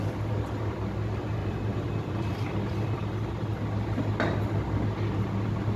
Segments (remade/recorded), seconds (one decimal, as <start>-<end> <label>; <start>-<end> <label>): 0.0-1.4 recorded; 1.4-3.3 remade; 3.3-5.8 recorded